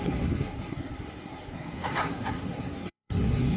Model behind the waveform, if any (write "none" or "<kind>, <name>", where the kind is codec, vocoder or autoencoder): codec, SNAC